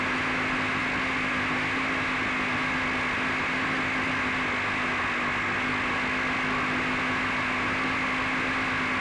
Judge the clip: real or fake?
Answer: real